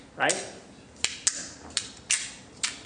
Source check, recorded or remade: recorded